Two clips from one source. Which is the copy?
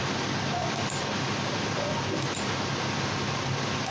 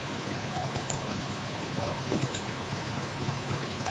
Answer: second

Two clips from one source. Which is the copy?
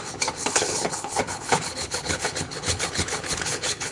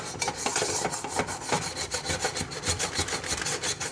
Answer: first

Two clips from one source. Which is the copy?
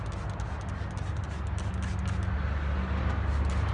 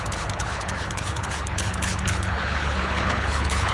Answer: second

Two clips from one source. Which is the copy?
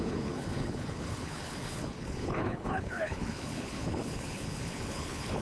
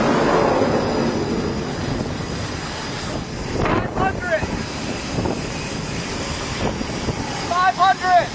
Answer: first